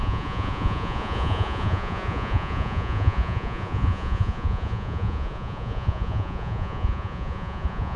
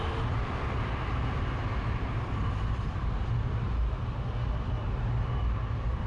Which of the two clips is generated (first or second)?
first